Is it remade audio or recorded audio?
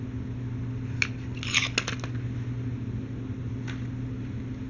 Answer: recorded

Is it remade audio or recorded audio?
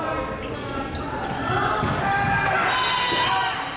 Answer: recorded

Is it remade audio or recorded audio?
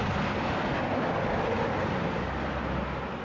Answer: recorded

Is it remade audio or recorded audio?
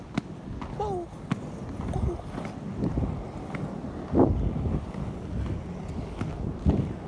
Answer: recorded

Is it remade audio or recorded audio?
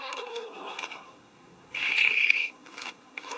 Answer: remade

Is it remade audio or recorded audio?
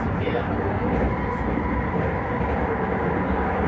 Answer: recorded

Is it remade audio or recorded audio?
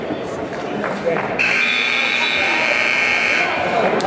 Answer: remade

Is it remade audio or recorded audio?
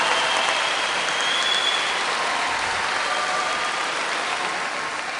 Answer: recorded